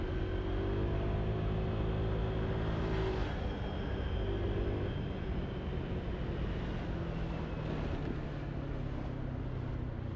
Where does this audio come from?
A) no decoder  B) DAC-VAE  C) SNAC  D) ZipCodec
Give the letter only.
A